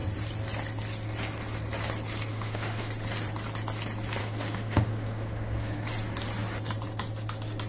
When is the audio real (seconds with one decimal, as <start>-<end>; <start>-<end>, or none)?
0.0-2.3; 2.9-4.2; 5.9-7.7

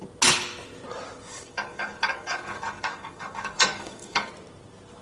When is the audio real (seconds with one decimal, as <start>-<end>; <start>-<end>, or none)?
0.0-1.3; 4.3-5.0

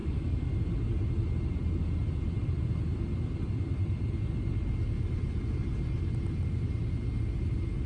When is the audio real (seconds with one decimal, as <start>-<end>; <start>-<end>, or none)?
0.5-7.9

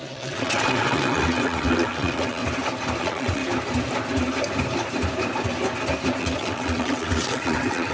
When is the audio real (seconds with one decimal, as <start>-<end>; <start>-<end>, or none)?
2.4-3.0; 3.4-6.2

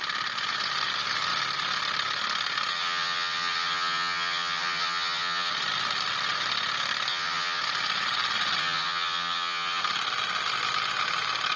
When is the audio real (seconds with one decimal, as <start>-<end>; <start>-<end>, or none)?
0.0-2.7; 5.5-7.1; 7.6-8.6; 9.8-11.6

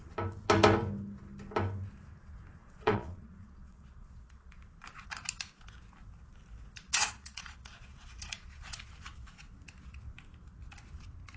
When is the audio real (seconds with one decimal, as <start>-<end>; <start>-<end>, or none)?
0.0-2.6; 4.6-6.9; 8.9-11.4

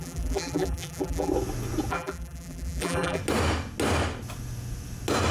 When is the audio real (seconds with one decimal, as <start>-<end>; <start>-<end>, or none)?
1.3-1.9; 3.2-5.3